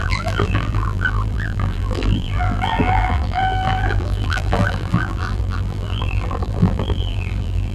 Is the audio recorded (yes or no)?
no